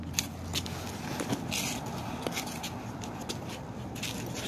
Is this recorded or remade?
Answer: recorded